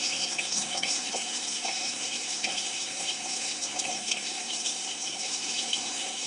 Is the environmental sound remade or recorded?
remade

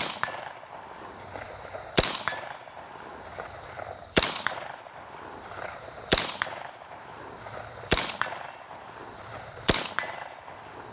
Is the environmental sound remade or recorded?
remade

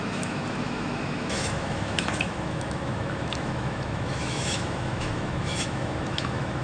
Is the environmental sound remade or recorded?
remade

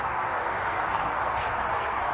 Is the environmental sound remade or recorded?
remade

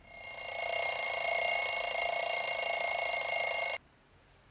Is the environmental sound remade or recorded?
recorded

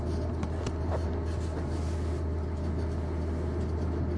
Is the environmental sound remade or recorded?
recorded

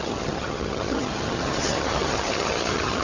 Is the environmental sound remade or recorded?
remade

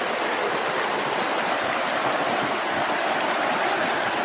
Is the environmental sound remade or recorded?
recorded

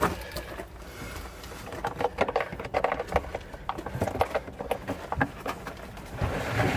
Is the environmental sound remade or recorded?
recorded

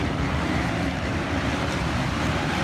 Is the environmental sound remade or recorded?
remade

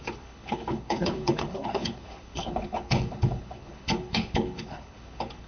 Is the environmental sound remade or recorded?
remade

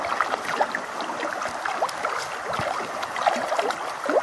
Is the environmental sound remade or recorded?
recorded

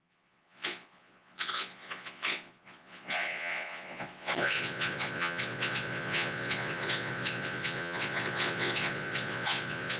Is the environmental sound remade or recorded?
remade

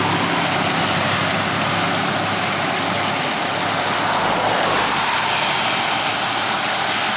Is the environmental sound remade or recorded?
recorded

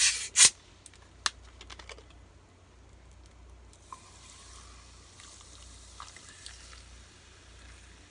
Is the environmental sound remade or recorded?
recorded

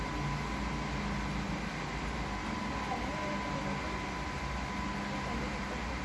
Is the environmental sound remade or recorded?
recorded